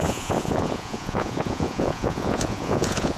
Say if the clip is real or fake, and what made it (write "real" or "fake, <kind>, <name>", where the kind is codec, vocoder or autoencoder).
fake, vocoder, Vocos